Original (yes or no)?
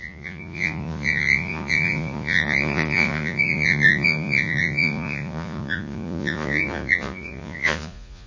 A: no